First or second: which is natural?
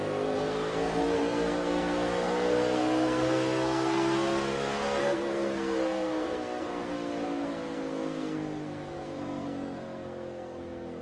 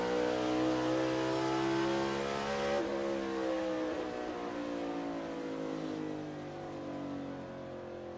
second